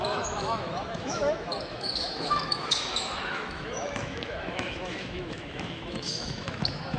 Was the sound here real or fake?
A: fake